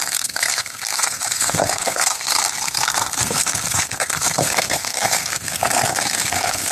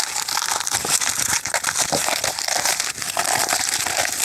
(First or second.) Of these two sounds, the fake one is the first